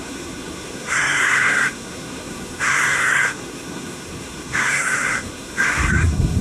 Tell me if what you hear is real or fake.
fake